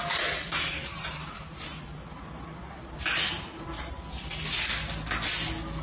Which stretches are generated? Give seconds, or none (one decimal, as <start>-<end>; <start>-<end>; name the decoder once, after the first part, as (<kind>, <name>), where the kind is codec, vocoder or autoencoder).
0.4-3.9 (vocoder, BigVGAN v2)